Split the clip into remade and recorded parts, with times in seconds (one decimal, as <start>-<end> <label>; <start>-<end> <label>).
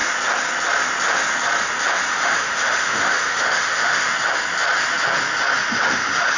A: 0.0-2.1 recorded; 2.1-4.1 remade; 4.1-5.7 recorded; 5.7-6.4 remade